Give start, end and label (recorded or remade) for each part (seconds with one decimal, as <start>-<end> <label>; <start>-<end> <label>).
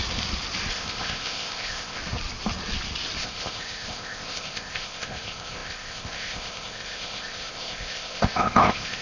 0.0-0.7 recorded; 0.7-2.0 remade; 2.0-3.2 recorded; 3.2-9.0 remade